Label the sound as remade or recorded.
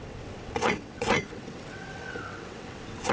remade